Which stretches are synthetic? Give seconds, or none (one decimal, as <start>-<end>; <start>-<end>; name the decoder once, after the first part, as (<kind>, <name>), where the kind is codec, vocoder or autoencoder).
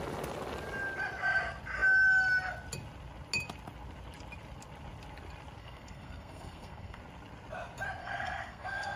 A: 5.6-7.0 (codec, SNAC); 8.0-9.0